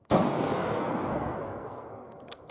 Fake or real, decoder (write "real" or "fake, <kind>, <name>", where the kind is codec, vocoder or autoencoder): fake, codec, SNAC